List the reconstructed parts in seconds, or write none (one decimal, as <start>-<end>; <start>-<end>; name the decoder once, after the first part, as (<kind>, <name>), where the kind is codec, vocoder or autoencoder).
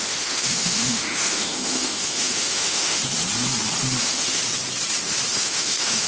0.0-3.0 (autoencoder, DAC-VAE); 4.0-4.4; 5.3-6.1